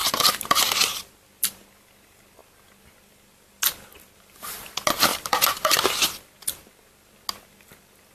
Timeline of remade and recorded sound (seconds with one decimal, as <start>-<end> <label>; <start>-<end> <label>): 0.0-0.7 remade; 0.7-5.1 recorded; 5.1-5.8 remade; 5.8-8.1 recorded